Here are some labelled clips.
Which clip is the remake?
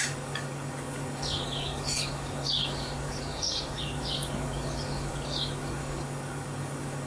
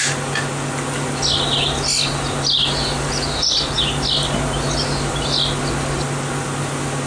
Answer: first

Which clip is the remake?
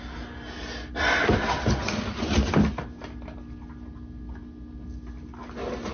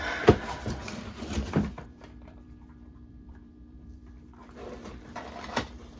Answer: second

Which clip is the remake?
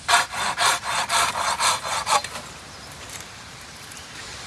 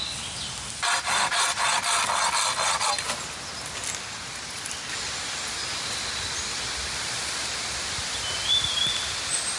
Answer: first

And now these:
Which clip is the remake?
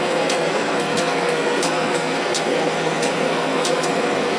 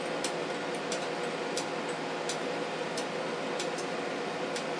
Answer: first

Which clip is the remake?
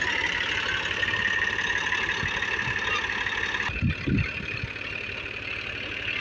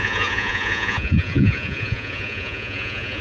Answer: second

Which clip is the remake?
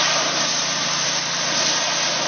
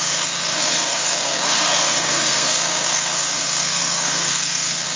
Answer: second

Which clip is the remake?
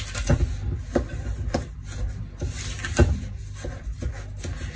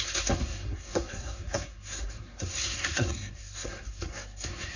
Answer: second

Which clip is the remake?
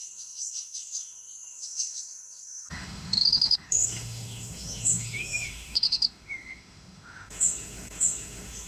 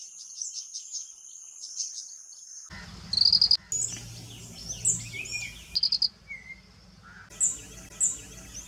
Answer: first